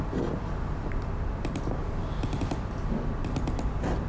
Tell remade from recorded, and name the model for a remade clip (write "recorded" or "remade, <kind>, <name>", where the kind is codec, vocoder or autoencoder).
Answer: recorded